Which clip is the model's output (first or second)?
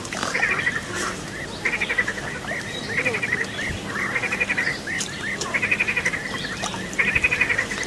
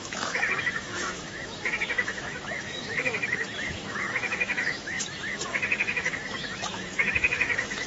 second